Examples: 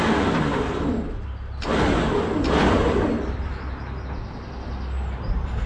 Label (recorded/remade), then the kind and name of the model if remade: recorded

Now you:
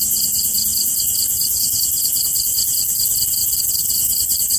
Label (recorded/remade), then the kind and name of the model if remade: recorded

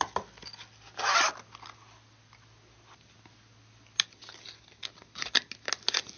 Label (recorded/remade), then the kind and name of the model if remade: recorded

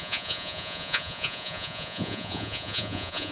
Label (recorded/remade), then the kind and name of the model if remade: remade, vocoder, Vocos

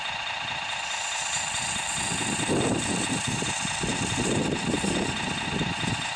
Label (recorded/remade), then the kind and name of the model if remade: recorded